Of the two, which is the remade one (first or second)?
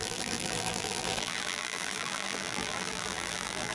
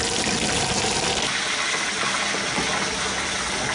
first